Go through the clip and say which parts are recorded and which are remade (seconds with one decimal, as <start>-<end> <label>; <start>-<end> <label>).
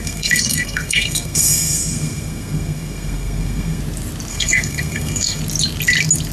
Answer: 0.0-3.8 remade; 3.8-4.3 recorded; 4.3-5.4 remade; 5.4-6.3 recorded